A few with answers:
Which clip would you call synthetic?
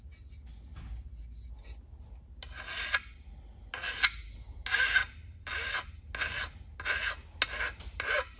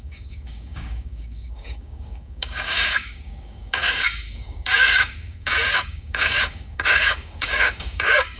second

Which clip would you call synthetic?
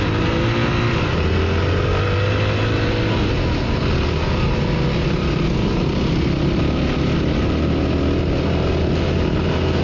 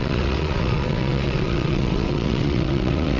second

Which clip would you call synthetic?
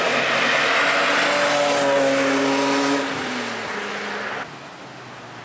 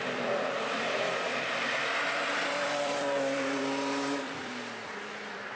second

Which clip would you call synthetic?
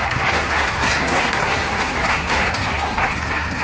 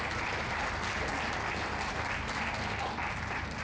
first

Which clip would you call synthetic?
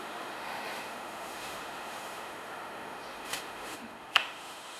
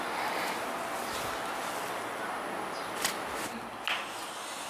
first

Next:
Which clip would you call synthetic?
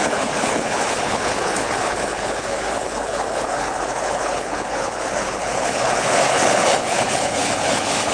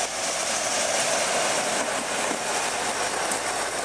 first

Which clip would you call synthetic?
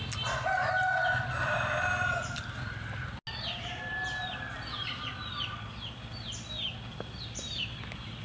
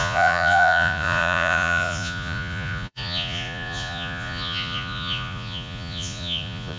second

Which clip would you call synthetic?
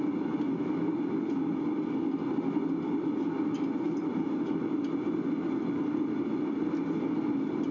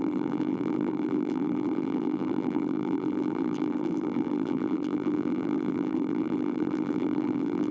second